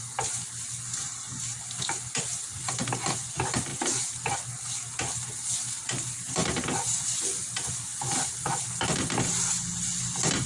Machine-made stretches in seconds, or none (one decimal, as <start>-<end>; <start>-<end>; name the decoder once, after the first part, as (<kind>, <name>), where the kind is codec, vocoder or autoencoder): none